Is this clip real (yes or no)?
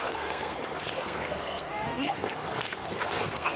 no